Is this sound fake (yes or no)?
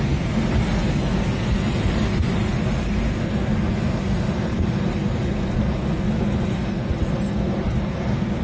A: no